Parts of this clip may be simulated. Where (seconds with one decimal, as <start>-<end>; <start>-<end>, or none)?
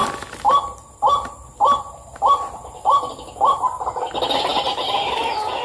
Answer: 0.0-3.1